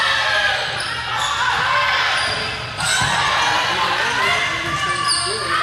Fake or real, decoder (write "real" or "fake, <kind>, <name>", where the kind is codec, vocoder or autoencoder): real